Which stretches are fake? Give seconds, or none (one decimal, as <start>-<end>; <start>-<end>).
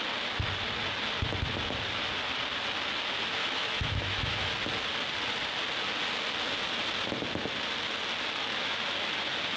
3.4-4.5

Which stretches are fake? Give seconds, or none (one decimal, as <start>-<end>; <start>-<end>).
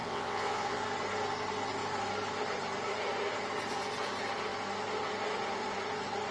0.0-0.8